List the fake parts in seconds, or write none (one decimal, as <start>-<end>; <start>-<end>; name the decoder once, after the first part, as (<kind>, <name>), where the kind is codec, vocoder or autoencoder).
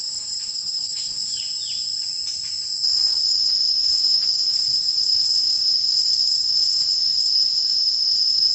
0.0-1.4 (codec, HILCodec); 3.1-8.5